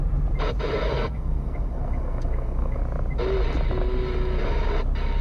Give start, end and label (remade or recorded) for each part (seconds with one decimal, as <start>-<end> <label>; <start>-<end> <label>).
0.0-0.8 recorded; 0.8-2.8 remade; 2.8-5.2 recorded